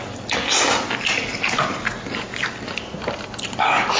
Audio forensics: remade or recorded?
recorded